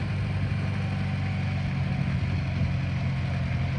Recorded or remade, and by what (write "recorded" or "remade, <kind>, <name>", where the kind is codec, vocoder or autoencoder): recorded